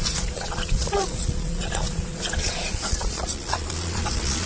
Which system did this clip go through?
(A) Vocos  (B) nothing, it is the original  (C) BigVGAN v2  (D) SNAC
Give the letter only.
A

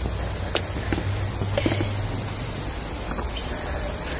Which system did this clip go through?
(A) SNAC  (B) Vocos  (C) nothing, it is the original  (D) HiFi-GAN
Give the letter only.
C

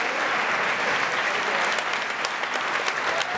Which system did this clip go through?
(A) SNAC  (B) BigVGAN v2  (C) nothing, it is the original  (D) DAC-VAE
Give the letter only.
C